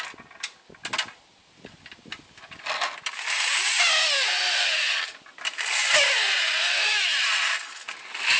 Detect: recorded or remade recorded